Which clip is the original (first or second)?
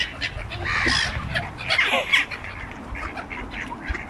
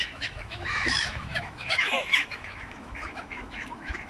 first